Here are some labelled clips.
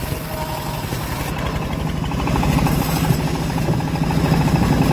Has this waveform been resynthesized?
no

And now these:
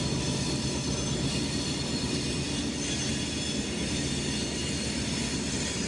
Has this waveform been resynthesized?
no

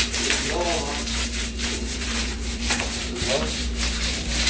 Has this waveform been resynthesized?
yes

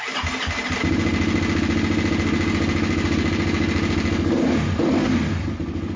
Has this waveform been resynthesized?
no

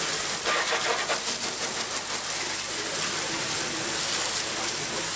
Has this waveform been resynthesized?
no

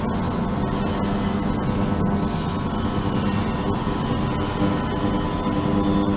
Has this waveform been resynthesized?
no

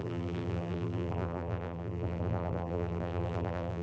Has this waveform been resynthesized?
yes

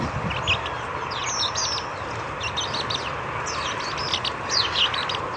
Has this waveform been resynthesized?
no